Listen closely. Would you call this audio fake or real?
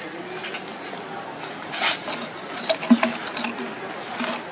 real